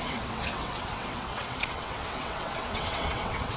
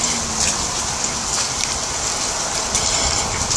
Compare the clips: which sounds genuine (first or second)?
second